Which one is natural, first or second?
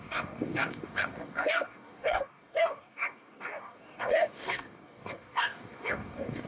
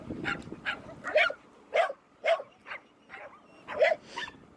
second